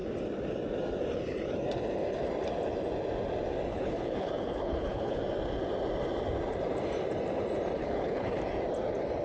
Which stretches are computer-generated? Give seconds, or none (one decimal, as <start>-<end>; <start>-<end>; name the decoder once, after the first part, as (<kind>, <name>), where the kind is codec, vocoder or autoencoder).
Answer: 3.7-5.2 (codec, HILCodec); 7.8-8.4